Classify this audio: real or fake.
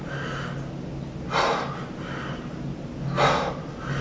real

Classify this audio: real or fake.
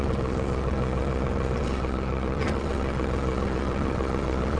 fake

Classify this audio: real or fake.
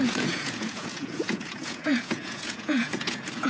fake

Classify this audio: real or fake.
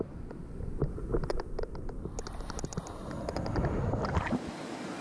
real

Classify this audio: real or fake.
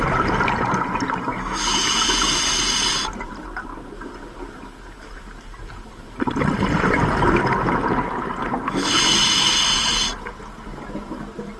real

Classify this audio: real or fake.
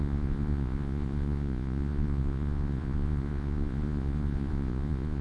fake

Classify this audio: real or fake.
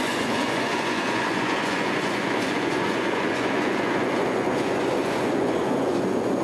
fake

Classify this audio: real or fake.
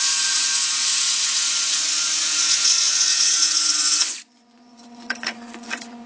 fake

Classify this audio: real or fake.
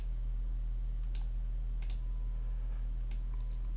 real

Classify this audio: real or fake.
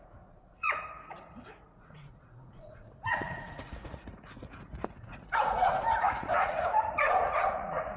fake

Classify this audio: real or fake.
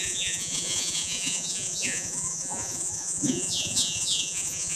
fake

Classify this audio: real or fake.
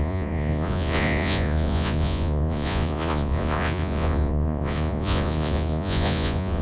fake